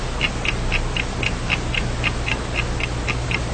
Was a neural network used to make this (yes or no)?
no